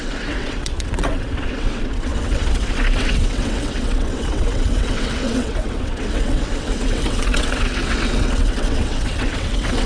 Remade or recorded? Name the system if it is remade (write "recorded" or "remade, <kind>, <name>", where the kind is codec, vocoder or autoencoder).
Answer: remade, vocoder, WaveNeXt